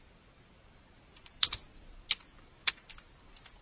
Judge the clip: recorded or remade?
recorded